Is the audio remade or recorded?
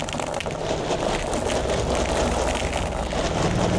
recorded